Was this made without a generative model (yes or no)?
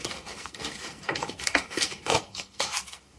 no